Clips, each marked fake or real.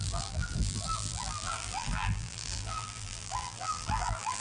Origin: fake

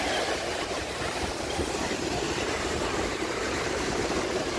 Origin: fake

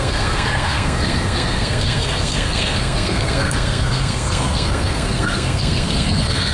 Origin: fake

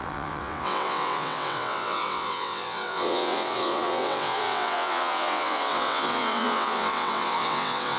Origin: fake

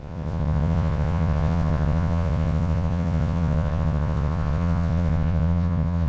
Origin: fake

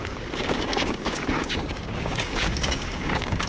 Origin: fake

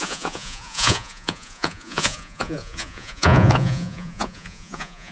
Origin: fake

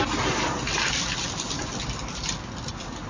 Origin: real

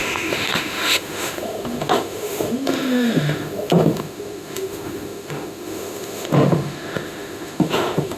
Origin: fake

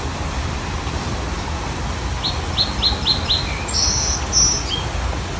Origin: real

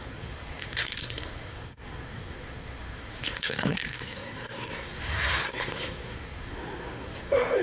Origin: fake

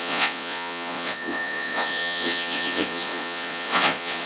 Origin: fake